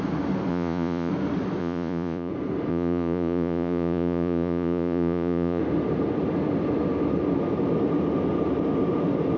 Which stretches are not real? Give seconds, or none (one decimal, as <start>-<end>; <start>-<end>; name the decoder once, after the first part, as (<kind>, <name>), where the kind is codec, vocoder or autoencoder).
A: 0.5-1.1 (vocoder, Vocos); 1.6-2.3; 2.7-5.6